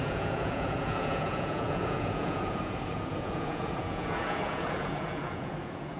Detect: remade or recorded remade